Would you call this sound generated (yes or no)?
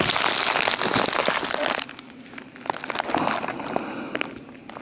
no